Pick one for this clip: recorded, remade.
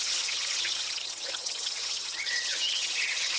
remade